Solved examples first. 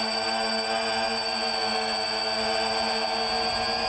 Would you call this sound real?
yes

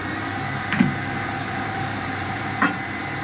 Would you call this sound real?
no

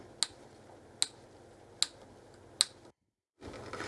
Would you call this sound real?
yes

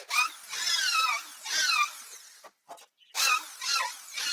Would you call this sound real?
yes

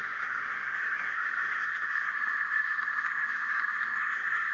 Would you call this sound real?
no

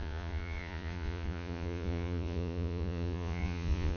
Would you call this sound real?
no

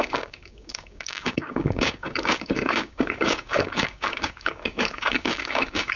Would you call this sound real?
no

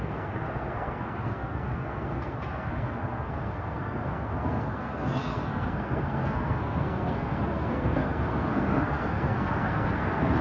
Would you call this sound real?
no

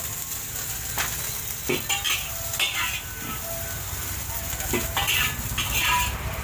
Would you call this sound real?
yes